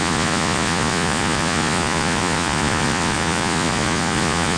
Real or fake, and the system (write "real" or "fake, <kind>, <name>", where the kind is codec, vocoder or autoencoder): fake, vocoder, Vocos